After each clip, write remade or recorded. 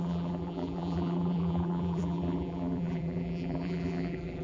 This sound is remade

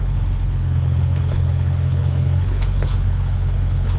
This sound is remade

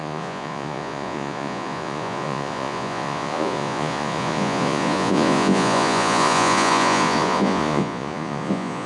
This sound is remade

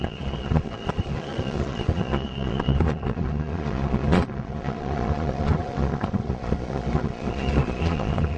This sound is remade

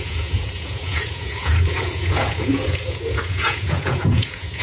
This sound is remade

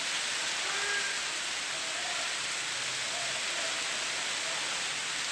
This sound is recorded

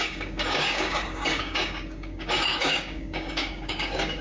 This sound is remade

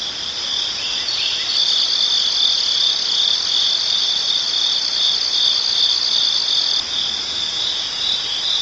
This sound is recorded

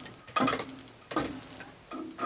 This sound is recorded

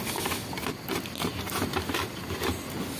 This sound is recorded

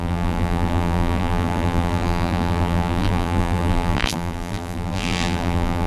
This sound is remade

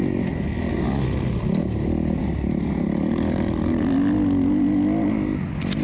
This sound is recorded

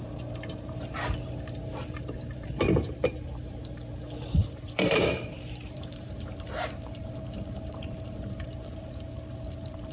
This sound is remade